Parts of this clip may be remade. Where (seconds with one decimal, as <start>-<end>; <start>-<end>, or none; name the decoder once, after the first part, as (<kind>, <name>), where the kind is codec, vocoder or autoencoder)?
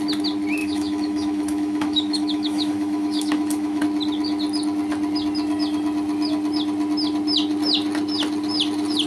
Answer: 0.6-3.8 (autoencoder, DAC-VAE)